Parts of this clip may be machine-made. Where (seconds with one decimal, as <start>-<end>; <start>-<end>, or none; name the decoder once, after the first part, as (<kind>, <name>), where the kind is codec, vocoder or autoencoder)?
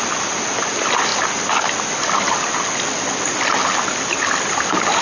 none